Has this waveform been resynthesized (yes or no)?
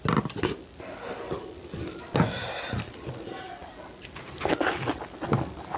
no